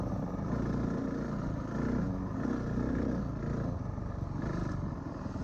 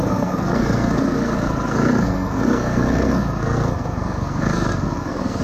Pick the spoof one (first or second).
second